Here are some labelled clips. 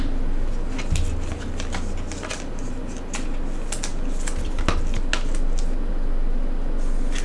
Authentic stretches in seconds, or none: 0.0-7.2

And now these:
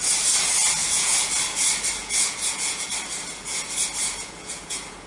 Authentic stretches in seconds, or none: 0.0-0.8; 1.3-2.0; 2.9-4.0

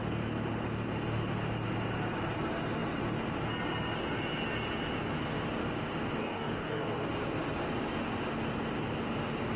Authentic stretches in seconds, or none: 0.0-6.2; 7.1-9.6

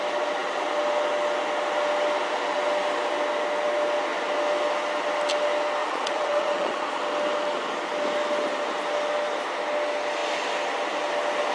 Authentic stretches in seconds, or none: 0.0-5.8; 7.0-11.5

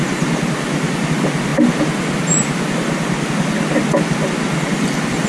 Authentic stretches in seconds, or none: 0.0-5.3

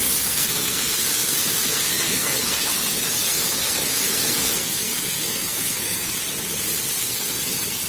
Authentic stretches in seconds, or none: 6.2-7.0